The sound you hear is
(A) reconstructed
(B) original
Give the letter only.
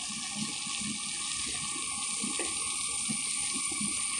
B